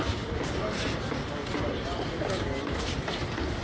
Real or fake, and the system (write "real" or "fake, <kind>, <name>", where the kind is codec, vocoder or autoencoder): real